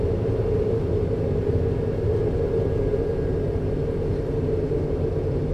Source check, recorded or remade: recorded